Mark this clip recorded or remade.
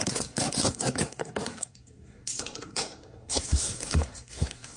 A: remade